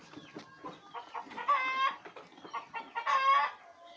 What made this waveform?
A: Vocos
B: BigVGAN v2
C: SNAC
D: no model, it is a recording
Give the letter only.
D